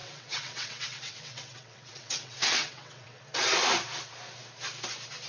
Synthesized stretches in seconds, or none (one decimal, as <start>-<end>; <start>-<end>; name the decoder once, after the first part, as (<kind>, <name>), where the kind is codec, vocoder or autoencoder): 0.0-3.2 (vocoder, WaveNeXt)